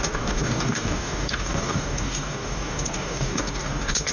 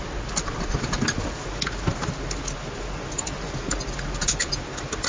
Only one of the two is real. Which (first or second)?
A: second